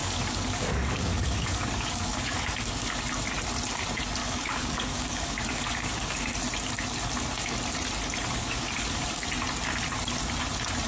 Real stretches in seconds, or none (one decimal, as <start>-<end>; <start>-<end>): 3.0-4.2; 6.3-8.4; 9.3-10.9